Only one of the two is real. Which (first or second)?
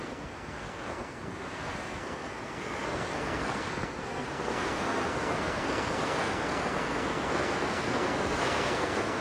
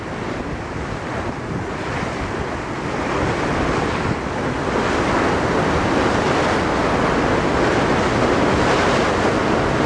second